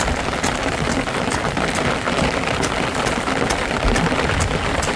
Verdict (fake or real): real